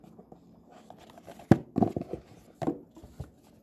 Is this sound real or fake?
real